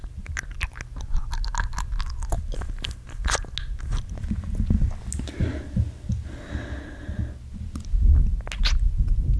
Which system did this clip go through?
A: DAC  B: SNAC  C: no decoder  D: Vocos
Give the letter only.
C